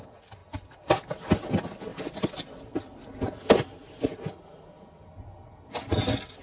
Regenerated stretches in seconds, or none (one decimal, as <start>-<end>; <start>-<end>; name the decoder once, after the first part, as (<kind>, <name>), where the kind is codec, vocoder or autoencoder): 0.4-1.5 (vocoder, BigVGAN v2); 1.9-5.7